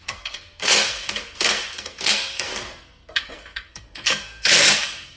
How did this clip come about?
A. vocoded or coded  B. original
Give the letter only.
A